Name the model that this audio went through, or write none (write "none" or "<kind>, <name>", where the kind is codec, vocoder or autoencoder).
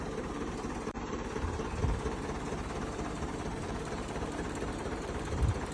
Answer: vocoder, BigVGAN v2